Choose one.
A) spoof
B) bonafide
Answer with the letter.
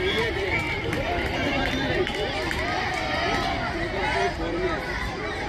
A